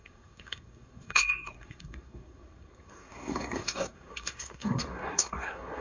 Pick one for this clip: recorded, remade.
remade